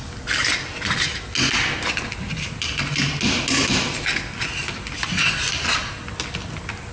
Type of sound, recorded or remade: recorded